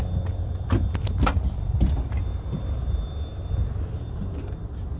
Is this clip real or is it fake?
real